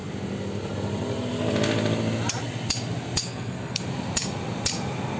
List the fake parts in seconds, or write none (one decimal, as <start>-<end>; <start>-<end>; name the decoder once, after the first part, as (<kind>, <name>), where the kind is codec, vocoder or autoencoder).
3.2-3.8 (codec, SNAC)